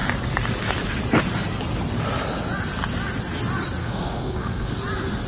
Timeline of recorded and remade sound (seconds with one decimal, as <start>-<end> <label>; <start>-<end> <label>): 0.0-3.8 recorded; 3.8-4.8 remade; 4.8-5.3 recorded